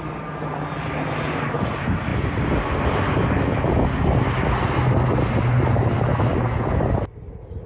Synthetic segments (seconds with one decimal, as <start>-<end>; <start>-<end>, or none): none